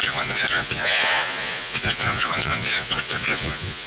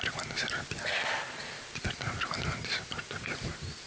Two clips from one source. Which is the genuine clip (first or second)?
second